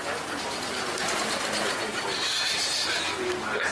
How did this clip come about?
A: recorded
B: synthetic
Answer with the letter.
A